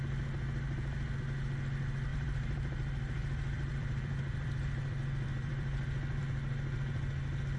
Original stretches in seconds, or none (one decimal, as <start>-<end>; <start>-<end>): 0.0-2.1; 6.2-7.6